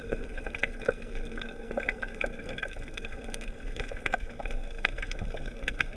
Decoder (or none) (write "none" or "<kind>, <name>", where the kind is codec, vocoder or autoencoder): codec, SNAC